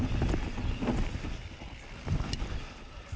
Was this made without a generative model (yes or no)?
yes